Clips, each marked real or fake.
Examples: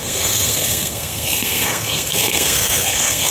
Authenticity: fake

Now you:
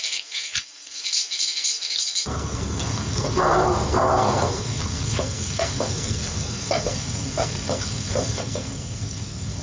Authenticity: fake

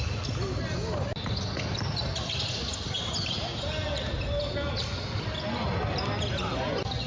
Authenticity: real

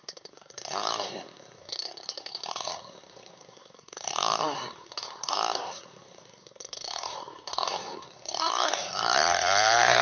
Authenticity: fake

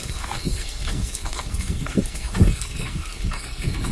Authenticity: fake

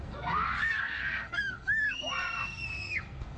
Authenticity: fake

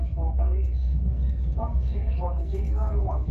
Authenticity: fake